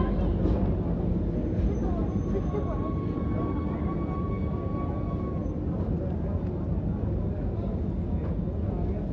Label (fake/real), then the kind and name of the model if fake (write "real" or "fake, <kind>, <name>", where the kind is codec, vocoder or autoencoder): real